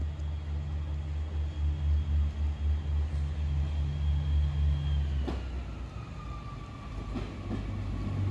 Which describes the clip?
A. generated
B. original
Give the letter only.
B